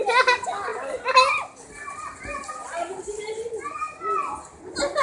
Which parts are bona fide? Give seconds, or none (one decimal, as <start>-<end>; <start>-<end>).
0.0-5.0